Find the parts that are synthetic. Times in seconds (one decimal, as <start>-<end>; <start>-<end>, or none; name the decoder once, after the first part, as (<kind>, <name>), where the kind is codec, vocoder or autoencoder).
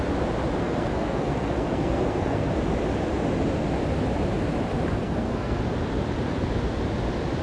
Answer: 0.6-2.5 (codec, SNAC); 5.0-5.6